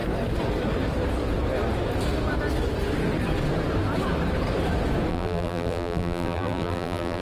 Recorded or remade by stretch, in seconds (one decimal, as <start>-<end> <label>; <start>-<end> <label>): 0.0-5.1 recorded; 5.1-7.2 remade

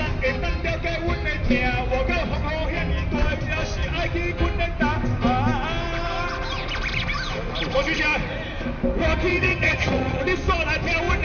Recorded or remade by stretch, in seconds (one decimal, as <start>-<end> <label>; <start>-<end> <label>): 0.0-9.3 recorded; 9.3-10.2 remade; 10.2-11.2 recorded